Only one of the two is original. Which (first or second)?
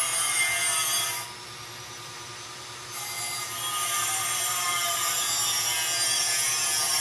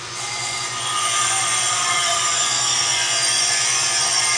first